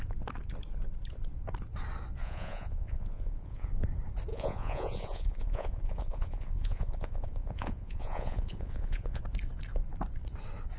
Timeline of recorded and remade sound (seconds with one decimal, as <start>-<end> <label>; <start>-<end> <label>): 0.0-2.2 recorded; 2.2-3.7 remade; 3.7-4.3 recorded; 4.3-9.2 remade; 9.2-10.8 recorded